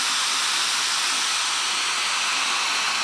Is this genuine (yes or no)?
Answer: yes